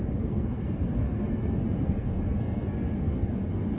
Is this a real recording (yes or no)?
no